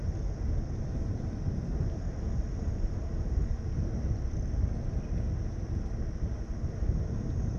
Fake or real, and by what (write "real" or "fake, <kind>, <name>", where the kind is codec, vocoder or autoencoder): real